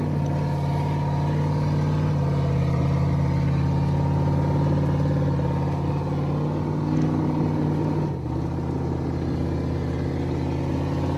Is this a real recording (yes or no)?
yes